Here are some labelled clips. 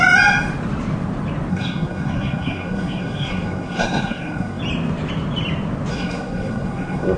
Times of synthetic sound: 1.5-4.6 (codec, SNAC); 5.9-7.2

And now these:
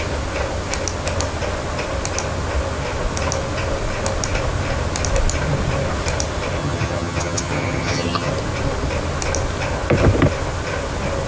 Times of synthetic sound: 6.6-8.3 (vocoder, HiFi-GAN)

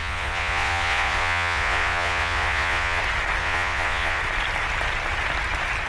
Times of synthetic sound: 0.0-3.0 (vocoder, Vocos); 3.4-4.2

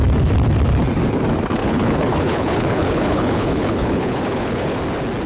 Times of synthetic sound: 1.6-4.8 (codec, HILCodec)

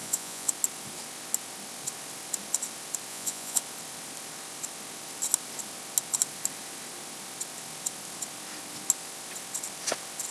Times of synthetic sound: 0.0-0.5 (vocoder, Vocos); 3.1-3.6